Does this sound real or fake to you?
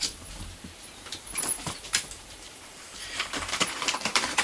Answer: fake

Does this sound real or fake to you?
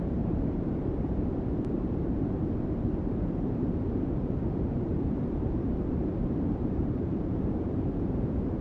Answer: fake